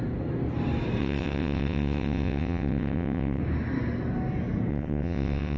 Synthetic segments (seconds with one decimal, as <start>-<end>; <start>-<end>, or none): 1.0-3.4; 4.7-5.6